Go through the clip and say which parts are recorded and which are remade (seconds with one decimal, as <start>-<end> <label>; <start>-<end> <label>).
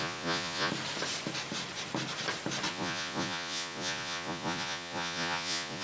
0.0-0.7 remade; 0.7-2.7 recorded; 2.7-5.8 remade